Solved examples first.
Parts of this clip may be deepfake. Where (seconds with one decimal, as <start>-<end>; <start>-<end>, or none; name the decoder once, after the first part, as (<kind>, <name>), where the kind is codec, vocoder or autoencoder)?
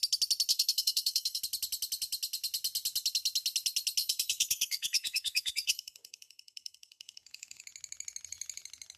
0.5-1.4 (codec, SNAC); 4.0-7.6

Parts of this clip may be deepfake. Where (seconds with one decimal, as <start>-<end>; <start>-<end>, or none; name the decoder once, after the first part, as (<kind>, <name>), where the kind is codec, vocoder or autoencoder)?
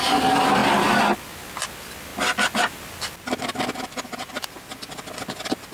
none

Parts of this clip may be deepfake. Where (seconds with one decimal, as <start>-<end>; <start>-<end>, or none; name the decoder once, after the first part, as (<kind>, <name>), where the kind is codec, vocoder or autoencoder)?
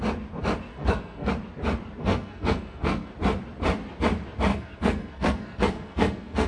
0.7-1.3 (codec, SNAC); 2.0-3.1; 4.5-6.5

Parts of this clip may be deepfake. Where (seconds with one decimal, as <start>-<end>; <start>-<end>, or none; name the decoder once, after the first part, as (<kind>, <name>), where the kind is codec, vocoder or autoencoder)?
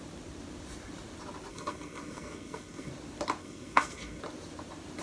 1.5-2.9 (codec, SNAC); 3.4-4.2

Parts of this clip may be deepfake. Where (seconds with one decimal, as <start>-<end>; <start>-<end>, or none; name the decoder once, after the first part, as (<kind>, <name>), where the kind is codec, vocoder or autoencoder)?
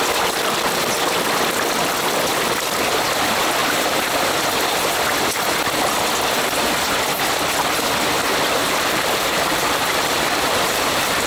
3.6-4.3 (vocoder, BigVGAN v2); 8.6-11.3